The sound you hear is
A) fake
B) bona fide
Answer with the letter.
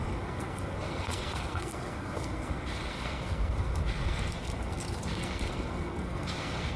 A